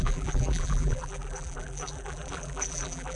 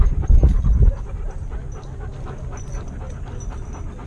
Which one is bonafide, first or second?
second